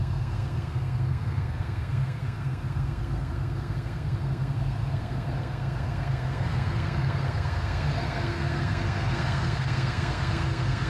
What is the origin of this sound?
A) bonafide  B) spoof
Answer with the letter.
B